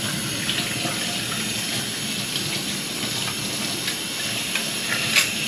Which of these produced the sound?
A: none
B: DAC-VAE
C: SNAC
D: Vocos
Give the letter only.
A